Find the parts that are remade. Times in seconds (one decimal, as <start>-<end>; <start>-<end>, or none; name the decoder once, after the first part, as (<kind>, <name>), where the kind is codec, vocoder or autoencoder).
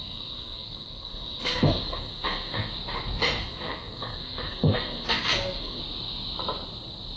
0.0-2.7 (codec, SNAC); 3.4-5.8